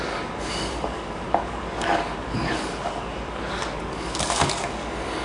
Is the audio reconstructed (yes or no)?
yes